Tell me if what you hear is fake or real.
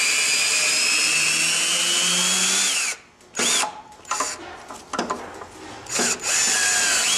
real